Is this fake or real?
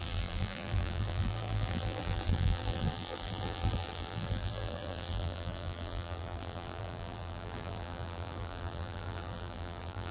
fake